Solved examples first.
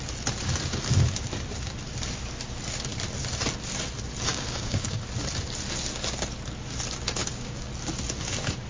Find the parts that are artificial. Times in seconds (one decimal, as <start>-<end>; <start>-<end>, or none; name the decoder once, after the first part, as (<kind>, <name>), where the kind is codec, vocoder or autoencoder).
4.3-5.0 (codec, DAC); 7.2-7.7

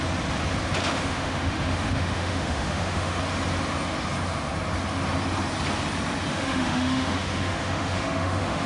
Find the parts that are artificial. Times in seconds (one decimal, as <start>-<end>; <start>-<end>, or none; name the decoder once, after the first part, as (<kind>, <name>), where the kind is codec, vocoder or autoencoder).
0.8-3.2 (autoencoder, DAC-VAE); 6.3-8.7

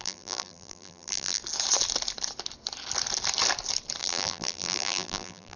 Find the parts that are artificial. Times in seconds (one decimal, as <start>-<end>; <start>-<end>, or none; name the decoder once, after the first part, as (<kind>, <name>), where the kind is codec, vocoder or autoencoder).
0.0-1.4 (vocoder, BigVGAN v2); 4.0-5.6